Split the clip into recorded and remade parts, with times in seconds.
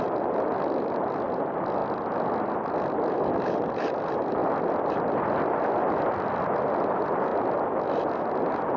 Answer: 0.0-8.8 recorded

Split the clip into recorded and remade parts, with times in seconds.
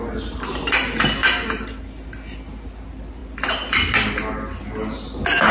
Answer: 0.0-5.5 recorded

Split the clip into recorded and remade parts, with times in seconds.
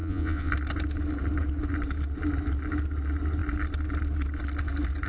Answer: 0.0-0.5 remade; 0.5-5.1 recorded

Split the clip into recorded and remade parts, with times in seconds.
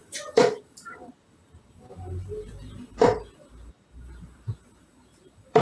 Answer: 0.0-5.6 remade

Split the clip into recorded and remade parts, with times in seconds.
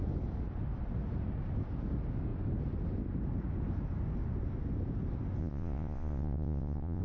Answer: 0.0-5.4 recorded; 5.4-7.0 remade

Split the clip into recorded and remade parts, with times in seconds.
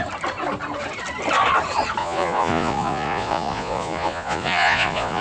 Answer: 0.0-2.0 recorded; 2.0-5.2 remade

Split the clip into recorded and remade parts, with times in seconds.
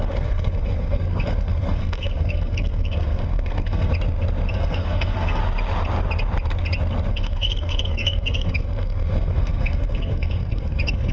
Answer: 0.0-3.9 remade; 3.9-4.5 recorded; 4.5-5.4 remade; 5.4-7.1 recorded; 7.1-11.1 remade